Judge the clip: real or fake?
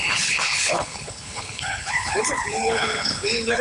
fake